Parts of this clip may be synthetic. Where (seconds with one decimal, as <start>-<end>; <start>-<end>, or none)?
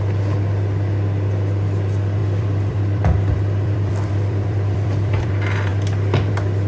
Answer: 2.2-5.3